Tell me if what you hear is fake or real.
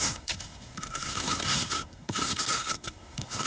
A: fake